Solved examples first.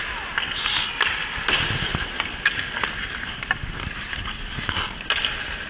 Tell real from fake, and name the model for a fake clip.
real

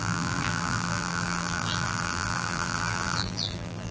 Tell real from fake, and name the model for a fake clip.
fake, vocoder, BigVGAN v2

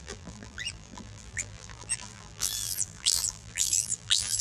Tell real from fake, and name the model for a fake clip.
fake, vocoder, BigVGAN v2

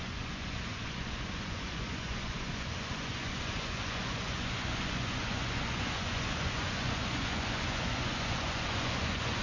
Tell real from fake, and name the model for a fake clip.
fake, vocoder, Vocos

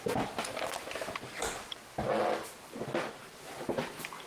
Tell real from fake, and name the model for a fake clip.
real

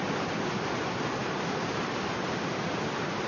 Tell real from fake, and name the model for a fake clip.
real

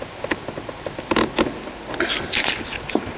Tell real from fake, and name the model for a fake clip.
real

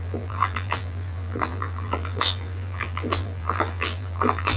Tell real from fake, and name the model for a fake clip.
fake, vocoder, BigVGAN v2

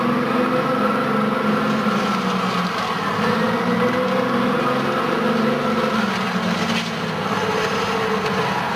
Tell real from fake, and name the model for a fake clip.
real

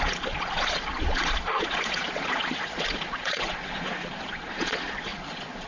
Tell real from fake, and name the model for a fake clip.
fake, vocoder, Vocos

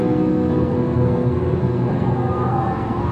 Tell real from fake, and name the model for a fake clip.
fake, codec, SNAC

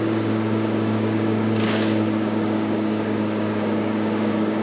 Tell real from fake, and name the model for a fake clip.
fake, codec, DAC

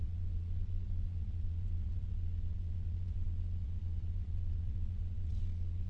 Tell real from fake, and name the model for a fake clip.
fake, vocoder, Vocos